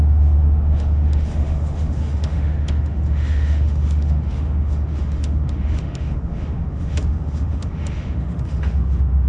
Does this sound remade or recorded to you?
remade